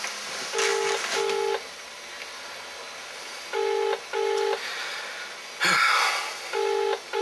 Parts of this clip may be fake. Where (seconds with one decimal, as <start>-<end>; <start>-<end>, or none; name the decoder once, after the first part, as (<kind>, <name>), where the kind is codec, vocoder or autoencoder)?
none